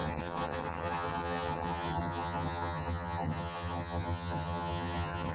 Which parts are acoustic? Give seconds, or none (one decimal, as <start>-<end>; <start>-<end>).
none